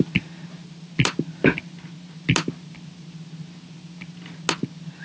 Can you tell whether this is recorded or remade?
recorded